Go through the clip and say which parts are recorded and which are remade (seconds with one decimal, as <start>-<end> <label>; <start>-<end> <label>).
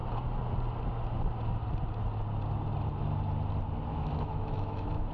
0.0-3.9 recorded; 3.9-5.1 remade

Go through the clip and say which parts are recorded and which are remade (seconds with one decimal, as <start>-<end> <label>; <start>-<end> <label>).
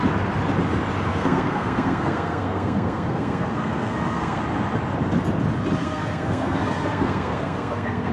0.0-1.1 recorded; 1.1-4.4 remade; 4.4-5.8 recorded; 5.8-8.1 remade